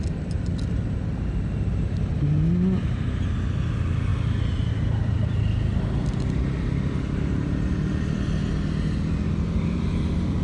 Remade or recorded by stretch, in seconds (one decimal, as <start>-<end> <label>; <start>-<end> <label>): 0.0-10.4 recorded